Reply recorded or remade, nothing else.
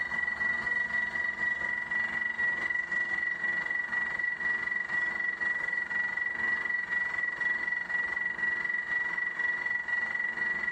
recorded